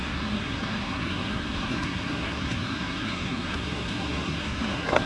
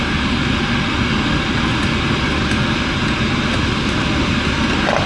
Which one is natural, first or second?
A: second